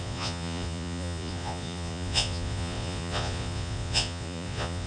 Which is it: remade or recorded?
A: remade